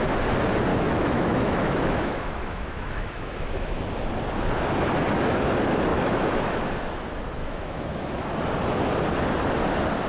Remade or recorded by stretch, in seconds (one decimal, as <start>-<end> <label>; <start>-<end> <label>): 0.0-0.7 recorded; 0.7-3.8 remade; 3.8-5.9 recorded; 5.9-6.6 remade; 6.6-7.4 recorded; 7.4-8.2 remade; 8.2-10.1 recorded